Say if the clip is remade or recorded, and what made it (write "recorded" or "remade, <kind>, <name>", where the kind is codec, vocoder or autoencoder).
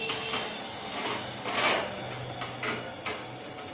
recorded